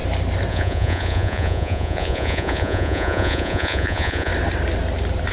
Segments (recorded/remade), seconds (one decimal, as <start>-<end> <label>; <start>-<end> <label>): 0.0-0.5 recorded; 0.5-4.3 remade; 4.3-5.3 recorded